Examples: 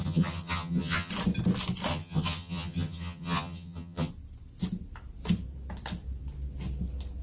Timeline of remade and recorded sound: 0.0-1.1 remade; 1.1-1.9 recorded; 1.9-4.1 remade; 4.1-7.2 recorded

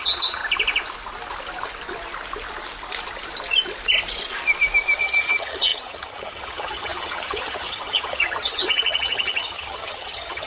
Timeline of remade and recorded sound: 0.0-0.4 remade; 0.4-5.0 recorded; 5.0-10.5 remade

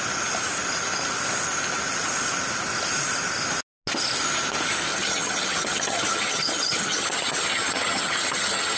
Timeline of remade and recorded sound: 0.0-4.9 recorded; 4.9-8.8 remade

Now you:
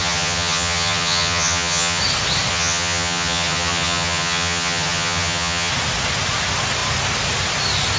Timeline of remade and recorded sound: 0.0-2.0 remade; 2.0-2.5 recorded; 2.5-5.7 remade; 5.7-8.0 recorded